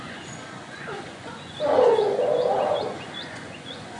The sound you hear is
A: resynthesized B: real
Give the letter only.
A